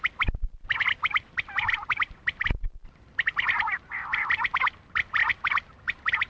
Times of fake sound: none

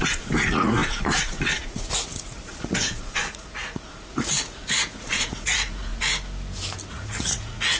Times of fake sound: 0.0-5.9 (vocoder, Vocos); 6.9-7.8